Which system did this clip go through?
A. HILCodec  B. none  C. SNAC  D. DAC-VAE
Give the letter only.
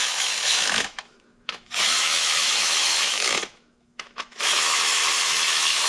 D